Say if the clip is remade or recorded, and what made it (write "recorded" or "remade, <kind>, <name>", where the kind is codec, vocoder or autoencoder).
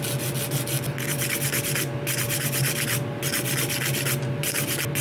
recorded